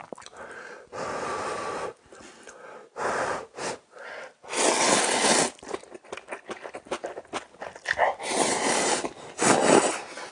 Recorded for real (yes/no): yes